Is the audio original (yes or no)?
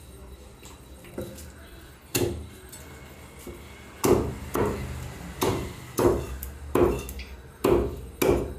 yes